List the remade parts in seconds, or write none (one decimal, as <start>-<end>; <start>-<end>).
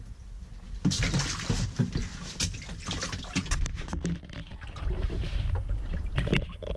4.5-6.3